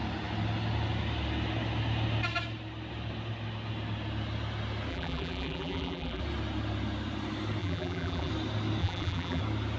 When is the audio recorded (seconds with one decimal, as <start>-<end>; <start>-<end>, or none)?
0.0-4.9; 6.2-7.6; 8.3-8.8; 9.4-9.8